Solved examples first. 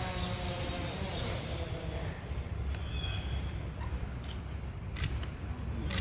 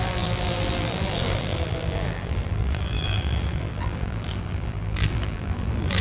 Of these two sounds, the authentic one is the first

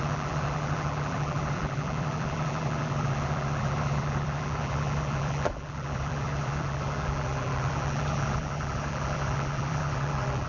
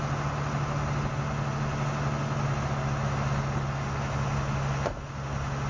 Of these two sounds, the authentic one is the second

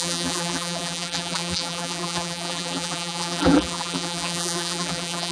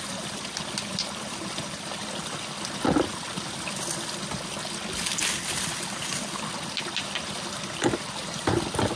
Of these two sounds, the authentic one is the second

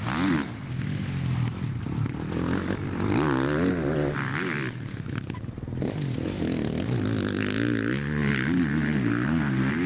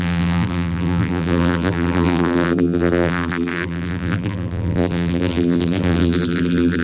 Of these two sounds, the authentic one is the first